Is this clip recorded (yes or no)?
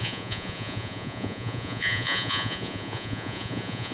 no